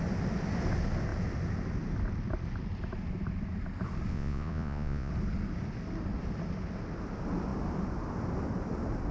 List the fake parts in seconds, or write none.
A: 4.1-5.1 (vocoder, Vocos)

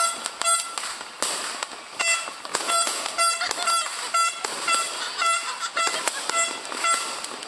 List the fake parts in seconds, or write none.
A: 2.5-3.0 (vocoder, Vocos)

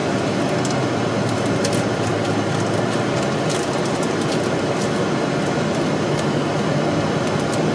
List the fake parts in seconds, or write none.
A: none

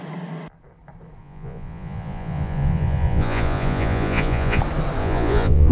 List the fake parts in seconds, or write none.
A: 1.2-4.6 (vocoder, Vocos); 5.0-5.7